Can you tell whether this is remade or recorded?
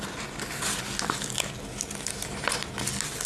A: recorded